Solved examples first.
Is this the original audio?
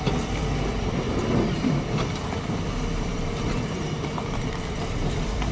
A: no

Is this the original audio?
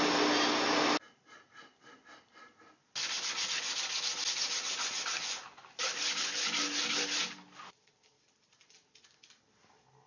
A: yes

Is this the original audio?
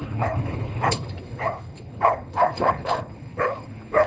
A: no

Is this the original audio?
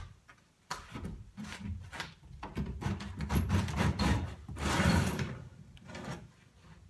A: no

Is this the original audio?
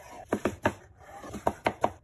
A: no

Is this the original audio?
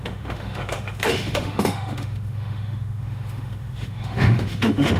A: no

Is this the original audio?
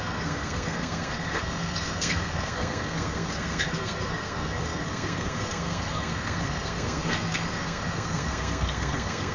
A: no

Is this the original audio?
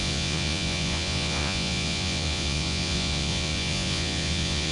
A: no